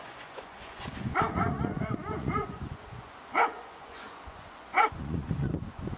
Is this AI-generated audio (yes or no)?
yes